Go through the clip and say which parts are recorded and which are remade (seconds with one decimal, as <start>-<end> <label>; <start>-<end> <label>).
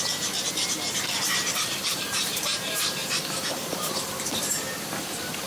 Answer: 0.0-5.5 remade